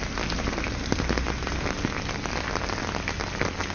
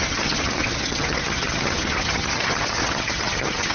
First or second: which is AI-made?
second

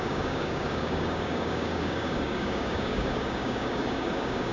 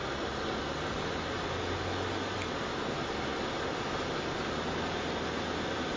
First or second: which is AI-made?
first